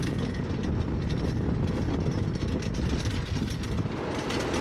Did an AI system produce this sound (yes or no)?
no